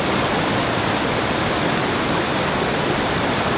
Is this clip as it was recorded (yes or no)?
yes